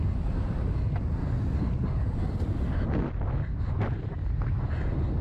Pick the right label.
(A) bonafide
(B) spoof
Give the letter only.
A